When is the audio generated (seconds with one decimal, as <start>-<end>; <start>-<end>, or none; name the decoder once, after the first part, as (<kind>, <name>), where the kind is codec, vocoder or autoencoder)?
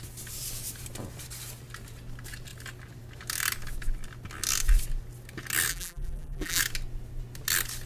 5.7-6.6 (vocoder, BigVGAN v2)